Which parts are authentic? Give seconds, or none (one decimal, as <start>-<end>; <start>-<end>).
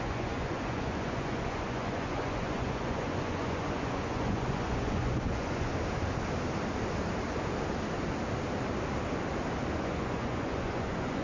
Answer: 5.7-9.8